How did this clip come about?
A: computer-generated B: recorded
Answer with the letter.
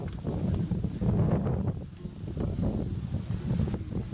B